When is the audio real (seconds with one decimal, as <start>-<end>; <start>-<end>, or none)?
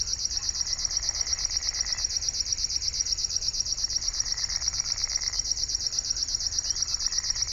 0.0-3.0; 5.7-7.5